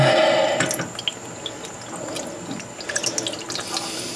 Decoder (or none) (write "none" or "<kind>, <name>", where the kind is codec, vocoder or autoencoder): none